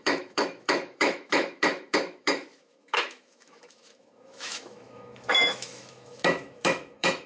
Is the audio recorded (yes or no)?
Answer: no